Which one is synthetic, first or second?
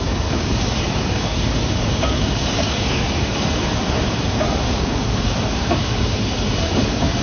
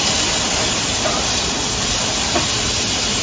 first